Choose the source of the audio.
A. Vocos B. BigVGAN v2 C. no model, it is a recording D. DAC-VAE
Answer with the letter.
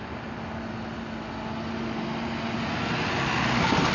C